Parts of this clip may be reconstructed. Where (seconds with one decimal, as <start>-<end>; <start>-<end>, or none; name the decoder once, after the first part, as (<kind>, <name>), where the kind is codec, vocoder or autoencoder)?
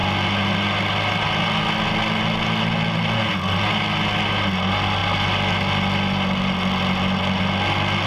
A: none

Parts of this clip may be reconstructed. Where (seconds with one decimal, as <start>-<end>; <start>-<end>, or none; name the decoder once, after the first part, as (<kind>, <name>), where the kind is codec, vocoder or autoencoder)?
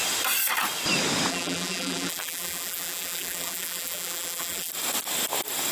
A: 1.3-4.7 (vocoder, BigVGAN v2)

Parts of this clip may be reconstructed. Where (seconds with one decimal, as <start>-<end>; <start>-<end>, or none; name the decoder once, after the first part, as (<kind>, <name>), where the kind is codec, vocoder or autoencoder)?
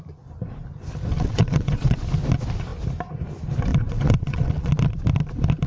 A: 1.1-2.0 (vocoder, WaveNeXt); 3.7-4.7